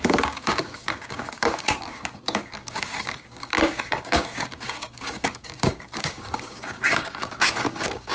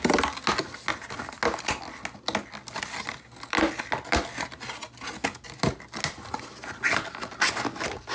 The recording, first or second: second